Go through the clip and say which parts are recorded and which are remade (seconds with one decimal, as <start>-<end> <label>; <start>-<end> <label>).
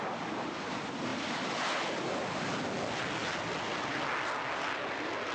0.0-5.3 recorded